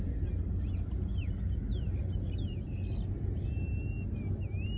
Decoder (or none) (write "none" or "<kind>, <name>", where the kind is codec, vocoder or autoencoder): none